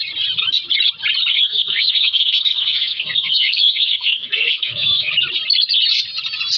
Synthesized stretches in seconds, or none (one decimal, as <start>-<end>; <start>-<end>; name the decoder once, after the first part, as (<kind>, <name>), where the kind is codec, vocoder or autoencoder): 1.3-5.1 (codec, SNAC)